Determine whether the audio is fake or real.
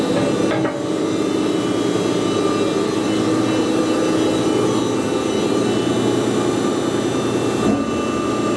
real